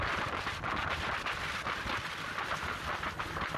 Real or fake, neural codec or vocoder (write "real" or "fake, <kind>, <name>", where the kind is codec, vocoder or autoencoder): real